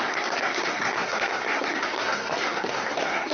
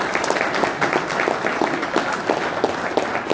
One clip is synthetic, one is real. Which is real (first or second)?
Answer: second